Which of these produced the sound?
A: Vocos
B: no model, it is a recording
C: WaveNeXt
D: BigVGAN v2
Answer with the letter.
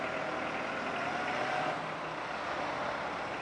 B